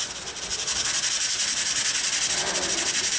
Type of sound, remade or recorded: recorded